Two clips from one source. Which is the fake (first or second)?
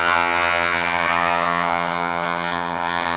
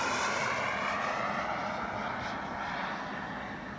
first